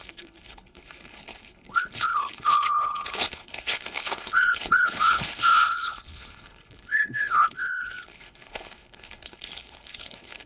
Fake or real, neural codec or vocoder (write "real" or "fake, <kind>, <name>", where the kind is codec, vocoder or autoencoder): fake, codec, HILCodec